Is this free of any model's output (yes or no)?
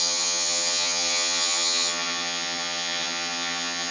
no